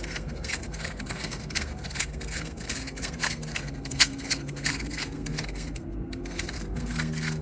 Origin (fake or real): fake